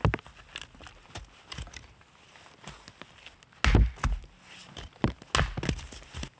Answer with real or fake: real